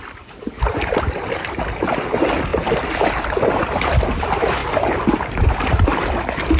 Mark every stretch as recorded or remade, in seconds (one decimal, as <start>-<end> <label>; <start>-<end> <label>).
0.0-4.6 recorded; 4.6-5.8 remade; 5.8-6.6 recorded